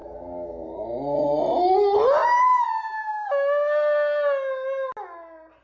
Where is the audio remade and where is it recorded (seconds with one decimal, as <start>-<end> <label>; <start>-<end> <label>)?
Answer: 0.0-0.7 remade; 0.7-5.6 recorded